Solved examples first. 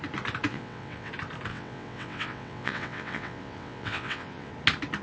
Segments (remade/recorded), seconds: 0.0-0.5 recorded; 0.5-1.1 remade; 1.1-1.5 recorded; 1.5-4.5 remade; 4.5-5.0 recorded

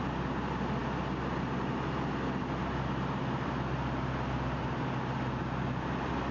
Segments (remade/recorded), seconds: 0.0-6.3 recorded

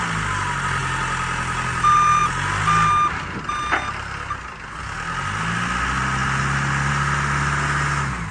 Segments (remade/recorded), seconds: 0.0-8.3 recorded